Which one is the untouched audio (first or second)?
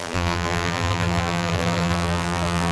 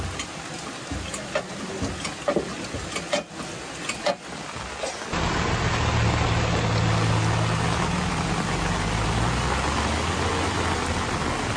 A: second